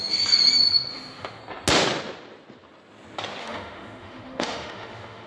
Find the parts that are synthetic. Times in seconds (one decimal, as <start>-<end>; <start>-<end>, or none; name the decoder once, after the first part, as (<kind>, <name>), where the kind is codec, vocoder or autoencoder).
0.9-1.4 (autoencoder, DAC-VAE); 3.4-5.3

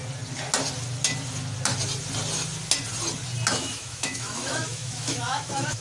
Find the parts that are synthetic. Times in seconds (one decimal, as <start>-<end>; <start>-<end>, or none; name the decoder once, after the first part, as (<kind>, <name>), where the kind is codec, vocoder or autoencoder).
3.5-5.8 (autoencoder, DAC-VAE)

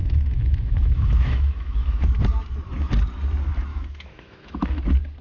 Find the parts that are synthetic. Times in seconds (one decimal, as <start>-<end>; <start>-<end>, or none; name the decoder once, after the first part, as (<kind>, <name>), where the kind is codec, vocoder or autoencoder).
0.0-2.2 (autoencoder, DAC-VAE); 3.7-4.8

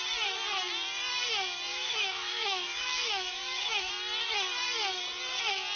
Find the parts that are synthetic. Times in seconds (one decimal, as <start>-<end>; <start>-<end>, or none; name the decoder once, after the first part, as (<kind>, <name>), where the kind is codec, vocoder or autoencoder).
1.7-3.9 (autoencoder, DAC-VAE)

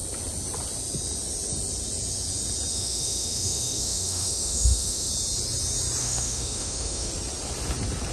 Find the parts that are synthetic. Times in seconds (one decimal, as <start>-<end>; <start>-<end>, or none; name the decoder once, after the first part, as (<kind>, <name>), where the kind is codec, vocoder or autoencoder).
2.7-5.1 (autoencoder, DAC-VAE); 6.0-7.1

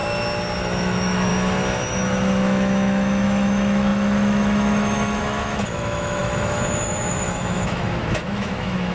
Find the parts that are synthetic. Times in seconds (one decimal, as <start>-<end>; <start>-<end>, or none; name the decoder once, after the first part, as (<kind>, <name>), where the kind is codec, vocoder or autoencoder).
0.6-1.3 (autoencoder, DAC-VAE); 1.9-8.9

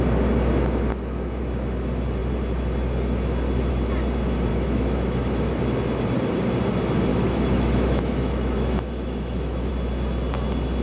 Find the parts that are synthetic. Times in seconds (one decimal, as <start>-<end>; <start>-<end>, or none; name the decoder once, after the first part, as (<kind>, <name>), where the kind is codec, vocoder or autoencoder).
0.9-1.4 (autoencoder, DAC-VAE); 4.5-5.6; 7.1-9.7

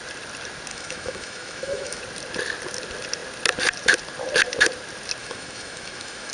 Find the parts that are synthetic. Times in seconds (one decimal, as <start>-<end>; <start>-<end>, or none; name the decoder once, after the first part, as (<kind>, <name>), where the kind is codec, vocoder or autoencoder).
0.7-2.0 (autoencoder, DAC-VAE); 5.2-6.3